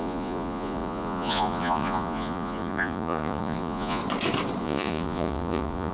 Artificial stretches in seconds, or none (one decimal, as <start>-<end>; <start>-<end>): 0.0-4.0; 4.6-5.9